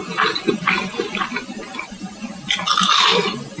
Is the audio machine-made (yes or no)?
no